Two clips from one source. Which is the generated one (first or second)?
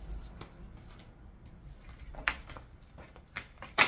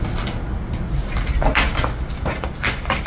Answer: first